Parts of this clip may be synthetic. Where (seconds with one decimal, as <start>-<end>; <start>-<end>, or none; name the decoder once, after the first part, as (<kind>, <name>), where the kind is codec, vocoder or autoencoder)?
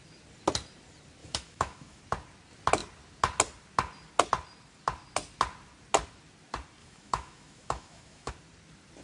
1.2-2.0 (autoencoder, DAC-VAE); 6.8-8.3